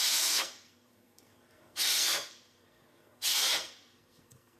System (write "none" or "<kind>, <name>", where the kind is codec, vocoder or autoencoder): codec, SNAC